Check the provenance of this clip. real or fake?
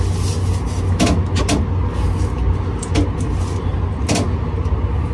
real